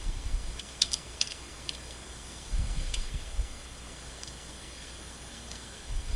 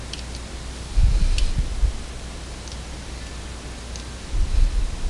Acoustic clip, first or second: second